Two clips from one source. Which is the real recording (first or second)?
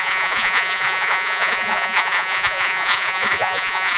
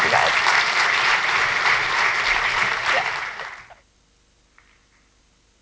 second